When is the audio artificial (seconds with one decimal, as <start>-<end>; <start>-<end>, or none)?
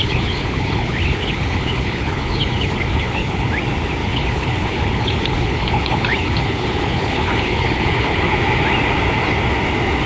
0.0-3.5; 4.0-8.3